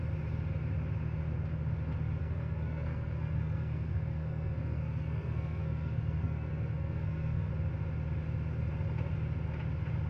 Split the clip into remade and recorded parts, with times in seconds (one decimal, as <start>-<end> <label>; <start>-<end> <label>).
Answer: 0.0-2.2 recorded; 2.2-7.5 remade; 7.5-10.1 recorded